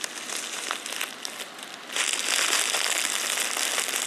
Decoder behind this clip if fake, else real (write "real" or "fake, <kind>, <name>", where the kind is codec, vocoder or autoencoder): real